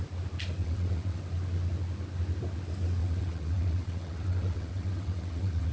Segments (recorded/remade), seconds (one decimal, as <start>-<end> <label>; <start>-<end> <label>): 0.0-0.6 recorded; 0.6-1.2 remade; 1.2-3.0 recorded; 3.0-5.7 remade